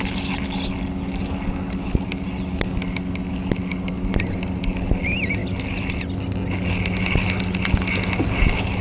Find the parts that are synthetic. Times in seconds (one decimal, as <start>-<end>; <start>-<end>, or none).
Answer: none